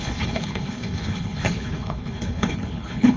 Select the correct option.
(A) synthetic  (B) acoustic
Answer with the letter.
A